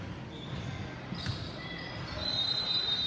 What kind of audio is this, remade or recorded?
recorded